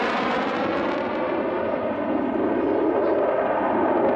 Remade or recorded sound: recorded